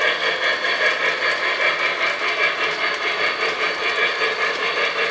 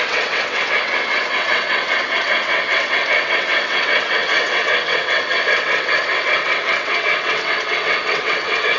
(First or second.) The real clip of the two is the first